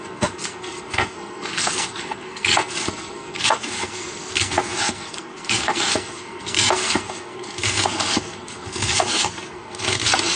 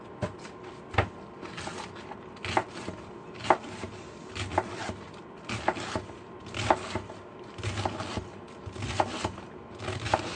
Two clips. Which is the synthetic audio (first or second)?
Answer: first